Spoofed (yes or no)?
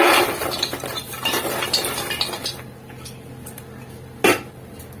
no